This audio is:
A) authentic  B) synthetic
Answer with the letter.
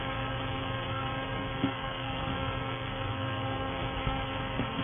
B